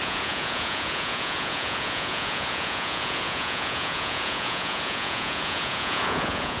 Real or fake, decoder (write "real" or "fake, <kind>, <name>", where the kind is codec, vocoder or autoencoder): fake, vocoder, Vocos